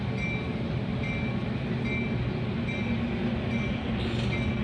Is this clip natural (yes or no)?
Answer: yes